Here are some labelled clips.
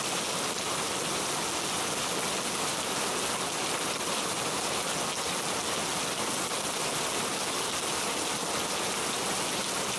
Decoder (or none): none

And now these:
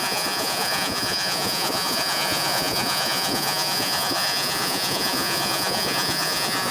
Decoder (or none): vocoder, Vocos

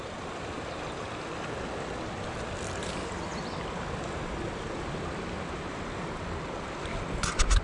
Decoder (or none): none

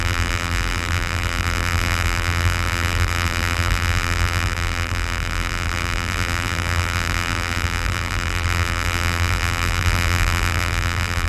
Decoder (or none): vocoder, BigVGAN v2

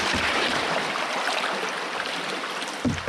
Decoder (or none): none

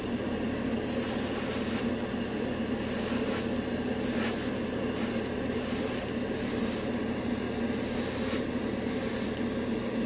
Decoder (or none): none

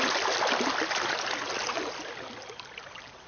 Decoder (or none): none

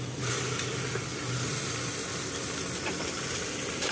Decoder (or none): none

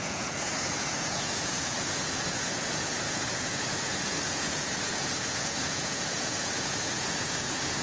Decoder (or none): vocoder, Vocos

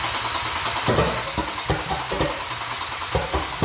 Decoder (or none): none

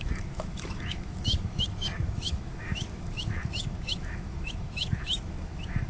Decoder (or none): autoencoder, DAC-VAE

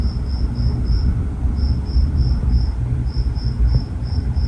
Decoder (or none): none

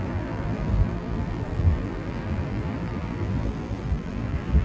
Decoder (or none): vocoder, BigVGAN v2